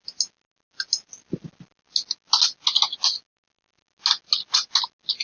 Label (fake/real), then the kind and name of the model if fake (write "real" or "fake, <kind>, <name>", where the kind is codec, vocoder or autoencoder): real